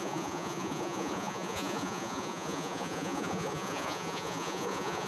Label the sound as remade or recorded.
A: remade